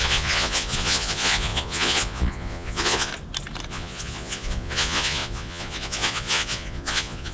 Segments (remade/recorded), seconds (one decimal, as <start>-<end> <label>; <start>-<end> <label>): 0.0-3.1 remade; 3.1-3.7 recorded; 3.7-7.3 remade